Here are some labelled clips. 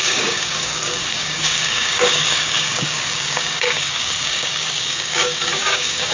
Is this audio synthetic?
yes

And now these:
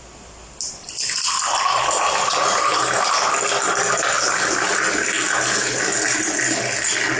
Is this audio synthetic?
no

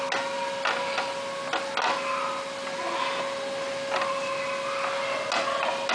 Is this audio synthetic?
no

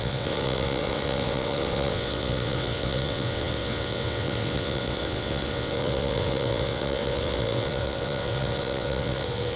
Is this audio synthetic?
yes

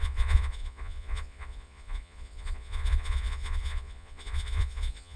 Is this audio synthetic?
yes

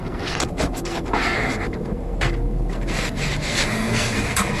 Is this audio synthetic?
yes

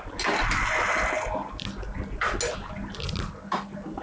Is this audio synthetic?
no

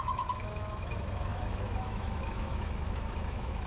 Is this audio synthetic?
yes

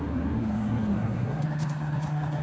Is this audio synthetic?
yes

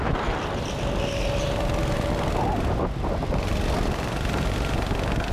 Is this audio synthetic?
no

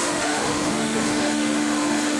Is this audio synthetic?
yes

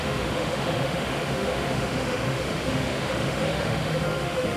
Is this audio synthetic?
yes